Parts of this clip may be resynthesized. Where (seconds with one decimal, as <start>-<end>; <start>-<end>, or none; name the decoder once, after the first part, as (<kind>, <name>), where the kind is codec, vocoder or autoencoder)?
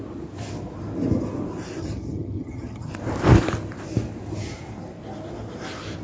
1.8-2.9 (vocoder, HiFi-GAN)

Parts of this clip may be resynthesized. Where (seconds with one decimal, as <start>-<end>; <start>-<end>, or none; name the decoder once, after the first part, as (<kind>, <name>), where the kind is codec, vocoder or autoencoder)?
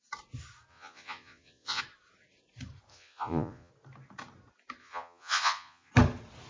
0.7-1.8 (vocoder, Vocos); 2.9-3.7; 4.8-5.9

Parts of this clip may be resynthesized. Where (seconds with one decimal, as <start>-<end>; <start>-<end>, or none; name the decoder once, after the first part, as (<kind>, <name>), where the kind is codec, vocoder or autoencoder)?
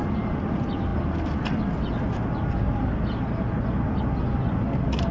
none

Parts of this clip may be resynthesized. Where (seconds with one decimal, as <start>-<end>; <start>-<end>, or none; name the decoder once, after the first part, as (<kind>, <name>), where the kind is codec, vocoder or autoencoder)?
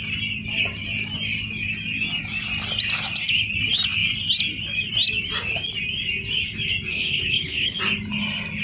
6.9-7.8 (codec, HILCodec)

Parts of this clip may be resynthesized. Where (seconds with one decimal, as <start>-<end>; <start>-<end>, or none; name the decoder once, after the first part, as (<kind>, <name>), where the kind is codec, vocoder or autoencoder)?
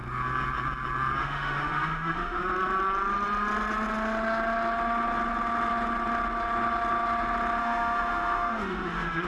1.2-2.4 (autoencoder, DAC-VAE); 7.6-9.3